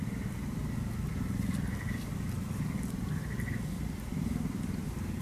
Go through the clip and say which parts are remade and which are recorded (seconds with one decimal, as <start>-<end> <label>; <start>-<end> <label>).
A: 0.0-5.2 recorded